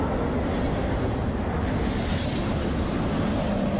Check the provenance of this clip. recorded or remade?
recorded